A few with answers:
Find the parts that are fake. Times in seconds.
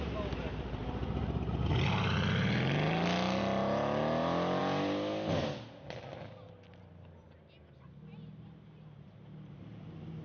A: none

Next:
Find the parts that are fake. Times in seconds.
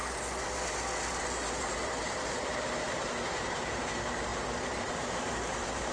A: 1.2-5.9 (vocoder, BigVGAN v2)